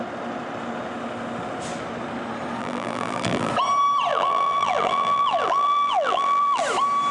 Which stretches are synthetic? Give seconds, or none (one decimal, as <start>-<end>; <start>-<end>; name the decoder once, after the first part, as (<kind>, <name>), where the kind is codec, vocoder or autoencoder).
2.6-3.5 (vocoder, BigVGAN v2); 4.1-6.6